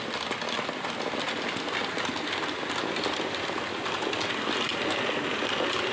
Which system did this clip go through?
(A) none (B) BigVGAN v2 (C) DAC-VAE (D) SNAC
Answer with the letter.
A